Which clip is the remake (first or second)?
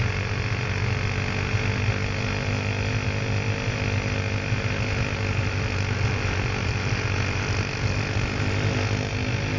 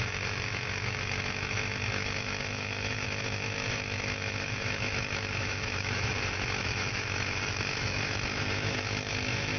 second